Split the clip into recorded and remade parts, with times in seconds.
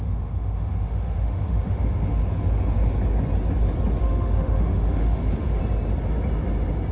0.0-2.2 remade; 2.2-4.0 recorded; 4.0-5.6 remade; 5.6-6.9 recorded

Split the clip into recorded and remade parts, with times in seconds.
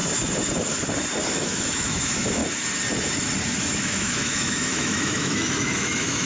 0.0-1.3 recorded; 1.3-2.4 remade; 2.4-3.6 recorded; 3.6-6.3 remade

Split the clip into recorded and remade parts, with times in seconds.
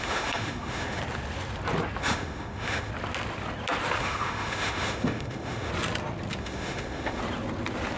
0.0-1.0 remade; 1.0-2.0 recorded; 2.0-2.9 remade; 2.9-4.0 recorded; 4.0-5.7 remade; 5.7-6.4 recorded; 6.4-7.2 remade; 7.2-8.0 recorded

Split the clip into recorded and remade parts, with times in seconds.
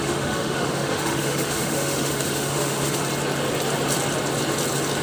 0.0-3.0 remade; 3.0-5.0 recorded